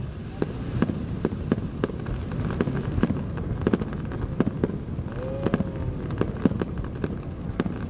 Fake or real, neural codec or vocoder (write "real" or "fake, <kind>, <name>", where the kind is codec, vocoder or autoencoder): real